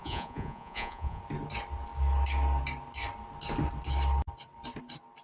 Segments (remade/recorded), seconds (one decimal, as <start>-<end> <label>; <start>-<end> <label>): 0.0-1.2 remade; 1.2-5.2 recorded